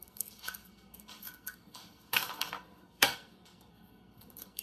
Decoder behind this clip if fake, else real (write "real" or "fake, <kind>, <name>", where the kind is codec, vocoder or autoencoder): fake, codec, SNAC